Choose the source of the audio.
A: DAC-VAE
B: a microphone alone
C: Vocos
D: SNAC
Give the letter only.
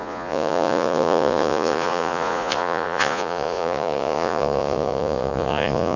C